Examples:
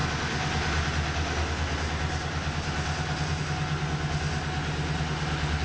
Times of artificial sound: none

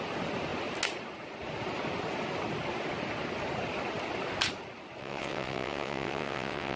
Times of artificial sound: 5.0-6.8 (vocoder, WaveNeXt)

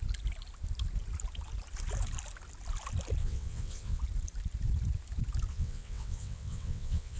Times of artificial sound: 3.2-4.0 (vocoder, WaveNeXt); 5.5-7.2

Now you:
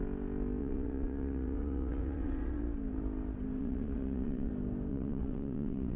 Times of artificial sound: 0.6-2.6 (vocoder, WaveNeXt); 3.6-4.5; 4.9-6.0

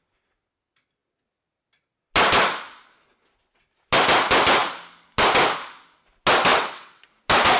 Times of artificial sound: 6.5-7.1 (vocoder, WaveNeXt)